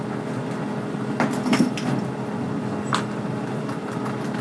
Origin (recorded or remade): recorded